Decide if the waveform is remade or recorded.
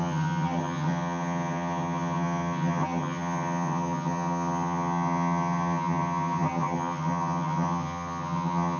remade